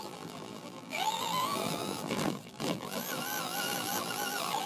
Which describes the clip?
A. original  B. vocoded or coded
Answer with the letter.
B